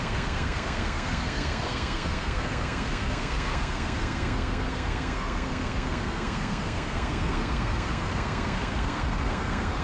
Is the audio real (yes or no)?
no